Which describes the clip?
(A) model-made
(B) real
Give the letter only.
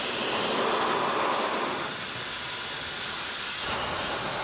B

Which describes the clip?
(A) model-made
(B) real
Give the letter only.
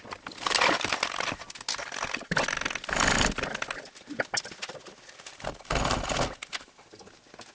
B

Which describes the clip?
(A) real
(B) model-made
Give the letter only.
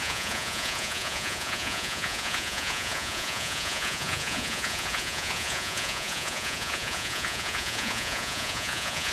B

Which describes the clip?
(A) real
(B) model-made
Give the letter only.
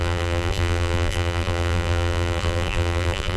B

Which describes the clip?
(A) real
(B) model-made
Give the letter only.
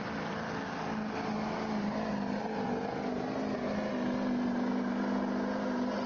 A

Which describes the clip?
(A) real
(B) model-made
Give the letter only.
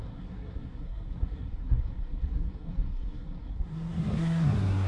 B